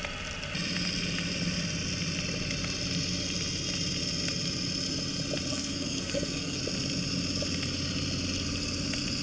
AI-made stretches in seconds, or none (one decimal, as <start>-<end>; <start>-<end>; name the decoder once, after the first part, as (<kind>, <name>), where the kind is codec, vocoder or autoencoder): 5.5-6.6 (codec, SNAC)